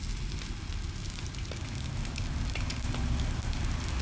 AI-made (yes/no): no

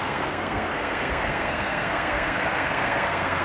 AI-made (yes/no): yes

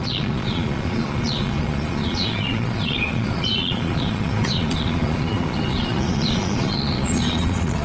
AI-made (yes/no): yes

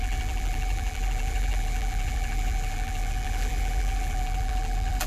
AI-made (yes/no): yes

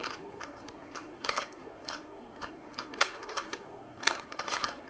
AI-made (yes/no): yes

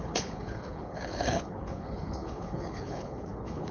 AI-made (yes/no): yes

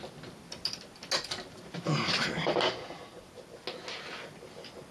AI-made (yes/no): no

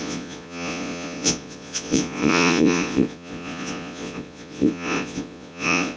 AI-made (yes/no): yes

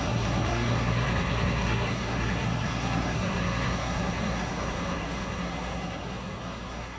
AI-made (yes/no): yes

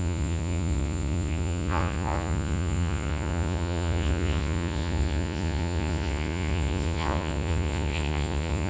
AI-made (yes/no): yes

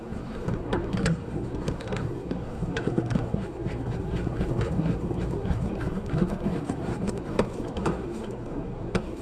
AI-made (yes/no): yes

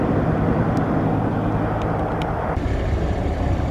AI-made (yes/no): no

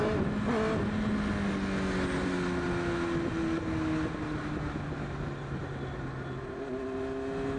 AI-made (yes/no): no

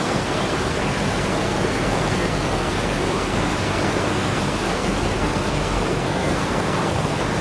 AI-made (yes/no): yes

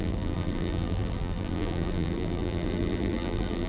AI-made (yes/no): yes